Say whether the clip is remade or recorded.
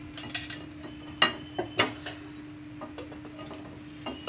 recorded